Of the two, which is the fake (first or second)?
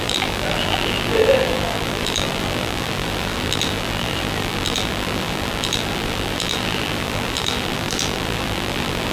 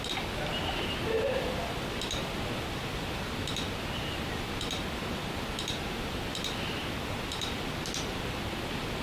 first